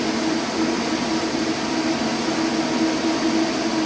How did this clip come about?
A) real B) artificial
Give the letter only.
A